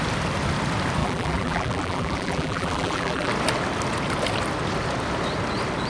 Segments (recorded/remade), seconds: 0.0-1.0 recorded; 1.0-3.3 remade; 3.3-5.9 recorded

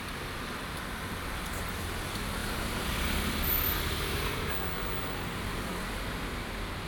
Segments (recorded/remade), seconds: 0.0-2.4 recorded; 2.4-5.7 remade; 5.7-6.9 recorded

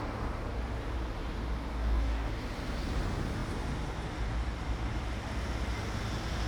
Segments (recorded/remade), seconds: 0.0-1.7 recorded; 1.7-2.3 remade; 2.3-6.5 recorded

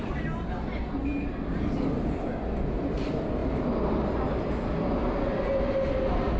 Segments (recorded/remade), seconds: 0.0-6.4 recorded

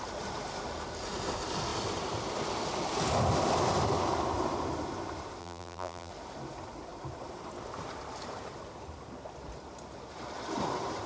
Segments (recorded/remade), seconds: 0.0-5.4 recorded; 5.4-6.1 remade; 6.1-11.1 recorded